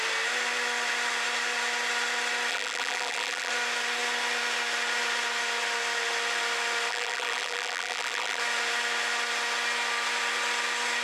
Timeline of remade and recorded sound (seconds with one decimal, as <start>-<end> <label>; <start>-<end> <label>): 0.0-2.5 recorded; 2.5-3.5 remade; 3.5-6.9 recorded; 6.9-8.4 remade; 8.4-11.0 recorded